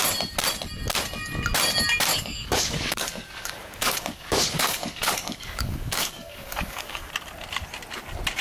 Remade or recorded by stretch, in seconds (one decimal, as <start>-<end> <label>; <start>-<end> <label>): 0.0-2.1 recorded; 2.1-7.1 remade; 7.1-8.4 recorded